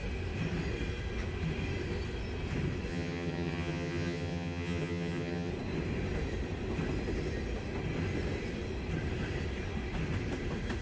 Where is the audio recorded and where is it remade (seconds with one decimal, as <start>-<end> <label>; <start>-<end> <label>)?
0.0-2.9 recorded; 2.9-5.5 remade; 5.5-10.8 recorded